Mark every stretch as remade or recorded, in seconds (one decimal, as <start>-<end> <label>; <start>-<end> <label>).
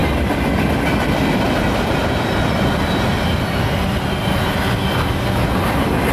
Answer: 0.0-6.1 recorded